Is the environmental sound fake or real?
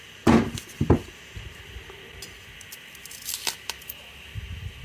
real